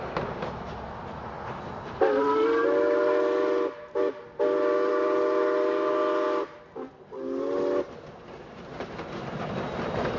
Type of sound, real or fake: real